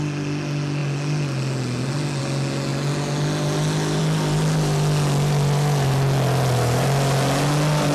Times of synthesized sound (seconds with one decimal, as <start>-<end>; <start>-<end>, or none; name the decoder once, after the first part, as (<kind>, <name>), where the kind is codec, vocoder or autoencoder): none